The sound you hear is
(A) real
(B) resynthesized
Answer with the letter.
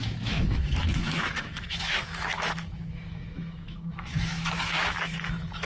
B